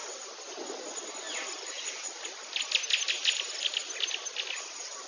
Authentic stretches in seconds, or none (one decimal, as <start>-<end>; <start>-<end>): 0.0-5.1